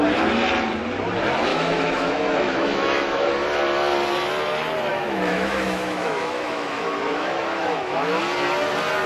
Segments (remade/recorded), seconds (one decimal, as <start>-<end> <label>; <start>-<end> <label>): 0.0-1.5 recorded; 1.5-3.3 remade; 3.3-4.9 recorded; 4.9-8.2 remade; 8.2-9.1 recorded